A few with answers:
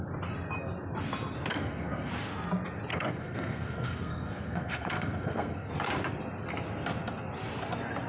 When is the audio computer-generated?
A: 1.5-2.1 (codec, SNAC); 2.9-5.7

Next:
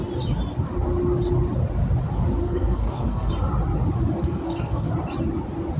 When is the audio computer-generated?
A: 2.4-3.3 (codec, SNAC); 4.2-4.9

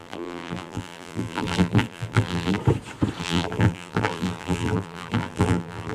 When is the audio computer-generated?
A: 0.0-2.6 (vocoder, BigVGAN v2); 3.2-5.9

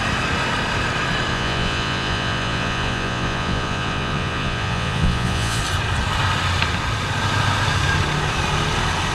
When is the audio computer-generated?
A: 1.3-5.6 (vocoder, Vocos)

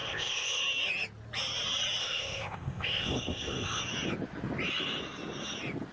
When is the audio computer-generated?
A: 0.0-0.6 (codec, ZipCodec); 2.0-3.8